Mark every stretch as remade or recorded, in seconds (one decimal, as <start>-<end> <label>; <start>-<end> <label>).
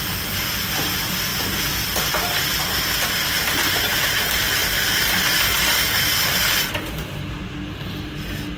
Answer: 0.0-8.6 recorded